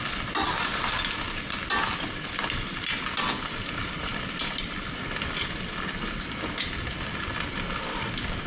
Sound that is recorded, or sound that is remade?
recorded